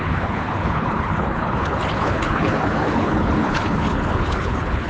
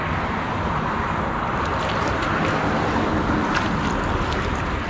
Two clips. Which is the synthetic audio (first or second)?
first